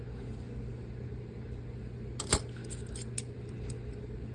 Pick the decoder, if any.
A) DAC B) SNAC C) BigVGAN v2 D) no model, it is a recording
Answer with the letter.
D